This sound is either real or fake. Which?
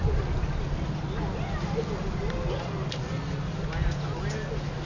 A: real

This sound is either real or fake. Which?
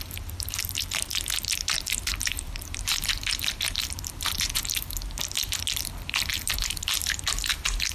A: fake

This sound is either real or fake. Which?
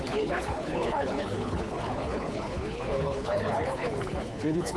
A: fake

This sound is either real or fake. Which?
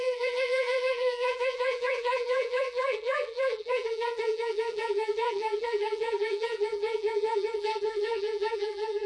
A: fake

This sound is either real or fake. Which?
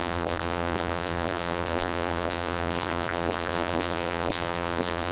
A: fake